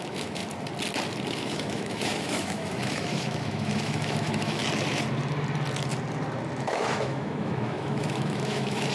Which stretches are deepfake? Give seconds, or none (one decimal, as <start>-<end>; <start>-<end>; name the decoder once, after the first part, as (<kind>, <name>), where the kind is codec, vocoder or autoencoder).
0.0-0.4 (autoencoder, DAC-VAE); 1.4-4.6; 6.6-8.9